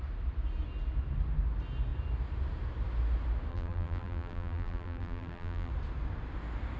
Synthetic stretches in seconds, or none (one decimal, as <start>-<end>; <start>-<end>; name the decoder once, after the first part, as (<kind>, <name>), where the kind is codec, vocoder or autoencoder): 3.5-5.7 (vocoder, BigVGAN v2)